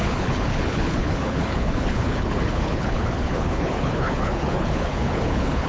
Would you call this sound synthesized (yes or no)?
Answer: yes